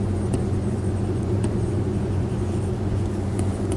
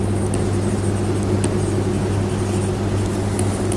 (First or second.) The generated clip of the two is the first